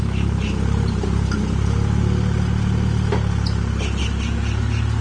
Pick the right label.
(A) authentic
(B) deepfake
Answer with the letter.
A